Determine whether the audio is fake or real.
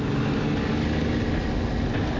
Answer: real